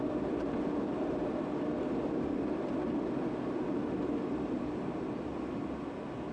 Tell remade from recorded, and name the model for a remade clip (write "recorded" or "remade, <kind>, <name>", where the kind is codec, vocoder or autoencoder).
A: recorded